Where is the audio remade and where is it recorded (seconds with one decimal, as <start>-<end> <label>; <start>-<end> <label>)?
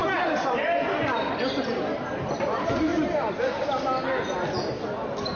0.0-5.4 recorded